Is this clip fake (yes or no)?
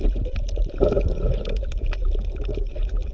no